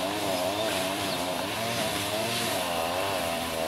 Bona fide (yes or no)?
no